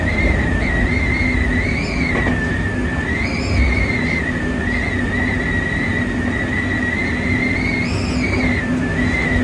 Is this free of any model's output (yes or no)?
yes